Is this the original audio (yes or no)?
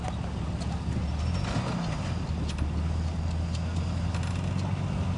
yes